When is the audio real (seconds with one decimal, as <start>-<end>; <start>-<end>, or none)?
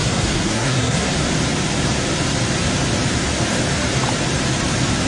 1.1-5.1